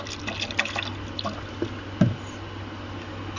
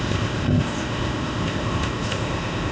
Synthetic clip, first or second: second